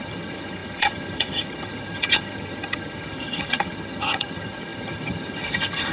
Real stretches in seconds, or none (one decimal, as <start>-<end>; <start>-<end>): none